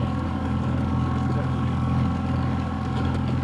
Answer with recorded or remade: remade